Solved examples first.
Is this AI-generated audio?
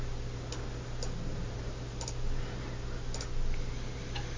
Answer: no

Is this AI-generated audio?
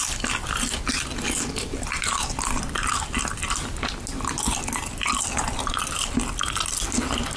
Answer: no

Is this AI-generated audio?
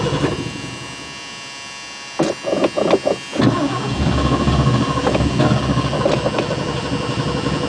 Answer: no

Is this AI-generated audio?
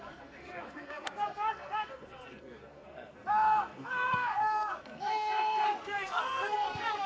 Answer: yes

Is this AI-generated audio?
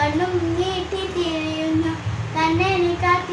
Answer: no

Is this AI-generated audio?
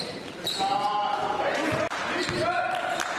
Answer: no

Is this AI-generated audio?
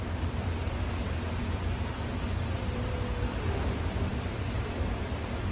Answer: no